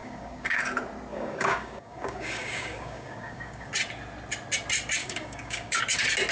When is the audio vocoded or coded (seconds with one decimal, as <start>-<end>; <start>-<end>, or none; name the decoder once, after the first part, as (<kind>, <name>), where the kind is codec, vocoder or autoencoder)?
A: 0.0-0.6 (codec, DAC); 1.1-3.7; 5.0-5.8